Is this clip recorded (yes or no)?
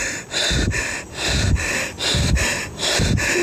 no